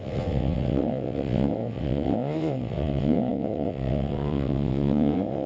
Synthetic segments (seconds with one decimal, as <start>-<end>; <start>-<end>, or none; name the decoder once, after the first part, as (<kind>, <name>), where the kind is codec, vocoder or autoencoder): 0.0-5.5 (vocoder, WaveNeXt)

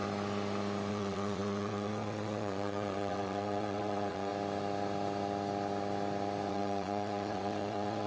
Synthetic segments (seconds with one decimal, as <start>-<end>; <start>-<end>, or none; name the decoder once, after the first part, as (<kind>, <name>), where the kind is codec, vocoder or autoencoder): 0.9-4.3 (vocoder, Vocos); 6.5-8.1

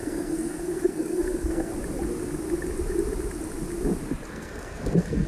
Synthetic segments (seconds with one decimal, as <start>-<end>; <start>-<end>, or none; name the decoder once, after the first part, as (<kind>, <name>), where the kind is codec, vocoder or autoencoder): 0.0-1.7 (codec, SNAC); 4.3-5.3

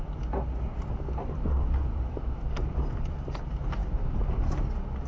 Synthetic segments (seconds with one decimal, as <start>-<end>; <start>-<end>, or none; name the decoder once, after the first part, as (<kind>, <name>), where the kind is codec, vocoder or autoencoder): none

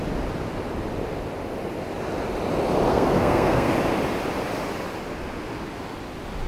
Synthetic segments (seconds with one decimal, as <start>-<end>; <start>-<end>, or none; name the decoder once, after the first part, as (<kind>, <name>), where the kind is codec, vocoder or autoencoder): 2.9-3.7 (codec, SNAC)

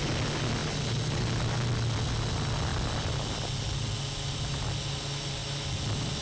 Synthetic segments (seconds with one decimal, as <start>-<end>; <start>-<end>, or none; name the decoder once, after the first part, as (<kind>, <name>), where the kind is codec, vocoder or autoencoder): none

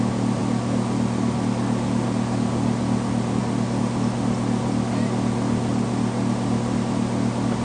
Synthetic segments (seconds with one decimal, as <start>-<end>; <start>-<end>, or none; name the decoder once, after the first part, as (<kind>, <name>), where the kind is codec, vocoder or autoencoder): none

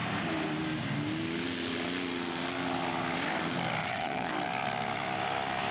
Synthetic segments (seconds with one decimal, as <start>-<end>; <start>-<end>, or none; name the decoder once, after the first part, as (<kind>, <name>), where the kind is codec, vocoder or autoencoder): 3.8-4.3 (vocoder, Vocos)